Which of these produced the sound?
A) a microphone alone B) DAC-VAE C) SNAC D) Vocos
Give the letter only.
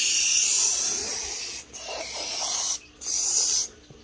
A